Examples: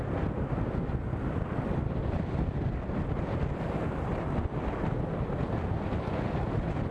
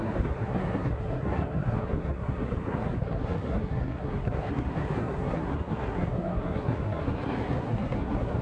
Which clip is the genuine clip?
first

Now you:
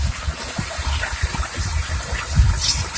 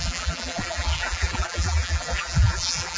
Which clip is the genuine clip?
first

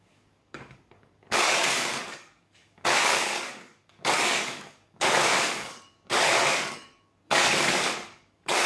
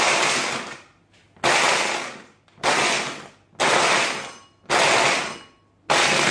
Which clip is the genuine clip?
second